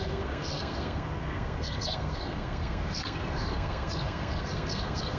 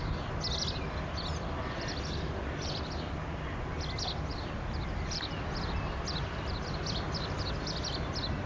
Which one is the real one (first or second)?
second